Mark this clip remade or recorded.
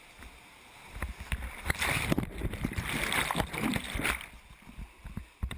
recorded